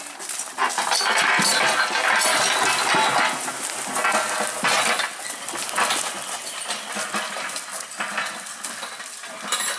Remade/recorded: recorded